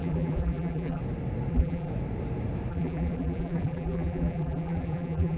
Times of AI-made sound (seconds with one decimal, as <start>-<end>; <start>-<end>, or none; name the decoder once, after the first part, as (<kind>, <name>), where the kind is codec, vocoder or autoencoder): 0.0-1.0 (vocoder, BigVGAN v2); 1.5-1.9; 2.7-5.4